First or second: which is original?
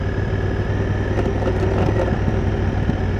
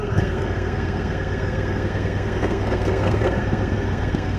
first